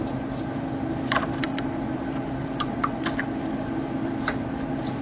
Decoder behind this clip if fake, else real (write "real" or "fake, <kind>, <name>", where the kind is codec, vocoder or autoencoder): real